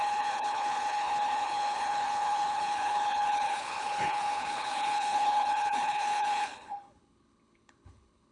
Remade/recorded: remade